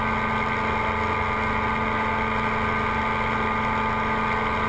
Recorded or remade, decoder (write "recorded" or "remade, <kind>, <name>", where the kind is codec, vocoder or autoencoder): recorded